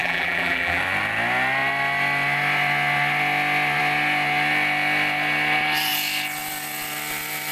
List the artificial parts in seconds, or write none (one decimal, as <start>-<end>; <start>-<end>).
0.0-0.8